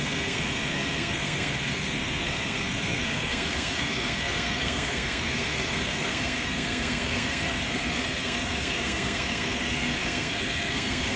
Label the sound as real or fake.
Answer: fake